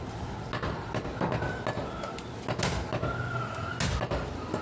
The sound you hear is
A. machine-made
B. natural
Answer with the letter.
B